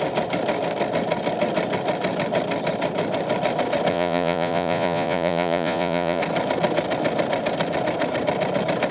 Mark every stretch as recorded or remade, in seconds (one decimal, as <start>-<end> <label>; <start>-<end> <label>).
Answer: 0.0-3.9 recorded; 3.9-6.2 remade; 6.2-8.9 recorded